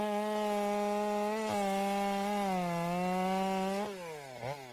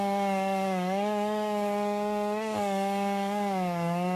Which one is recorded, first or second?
first